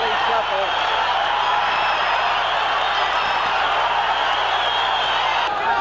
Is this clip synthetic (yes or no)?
no